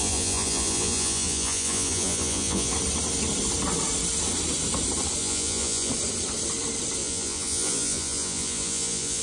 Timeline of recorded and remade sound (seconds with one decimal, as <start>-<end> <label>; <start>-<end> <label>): 0.0-2.7 remade; 2.7-5.2 recorded; 5.2-5.9 remade; 5.9-7.0 recorded; 7.0-9.2 remade